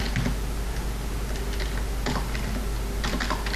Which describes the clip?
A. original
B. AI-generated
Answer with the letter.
A